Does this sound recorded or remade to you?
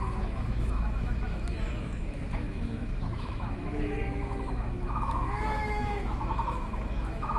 remade